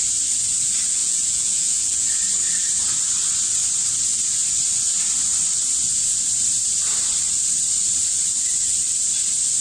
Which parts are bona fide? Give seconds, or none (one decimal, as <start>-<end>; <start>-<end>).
0.0-1.0; 2.1-9.6

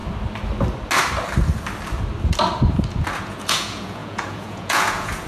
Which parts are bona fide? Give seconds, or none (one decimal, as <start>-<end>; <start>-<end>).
0.0-3.2

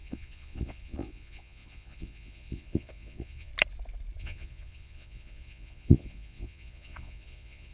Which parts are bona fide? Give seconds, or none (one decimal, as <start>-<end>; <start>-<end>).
3.5-4.2

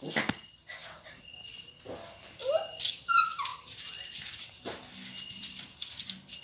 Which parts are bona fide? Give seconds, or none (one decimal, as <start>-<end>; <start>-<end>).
0.0-6.4

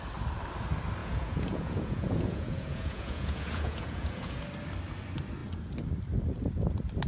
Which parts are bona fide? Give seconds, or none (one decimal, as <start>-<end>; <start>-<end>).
0.0-1.0; 4.4-7.1